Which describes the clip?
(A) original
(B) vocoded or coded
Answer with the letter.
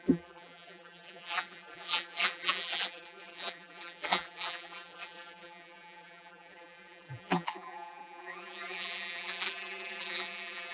B